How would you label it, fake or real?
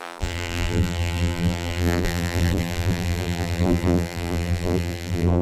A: fake